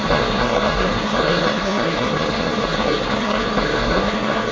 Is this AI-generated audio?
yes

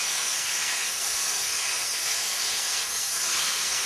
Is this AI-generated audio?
yes